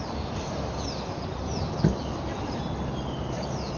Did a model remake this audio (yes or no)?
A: no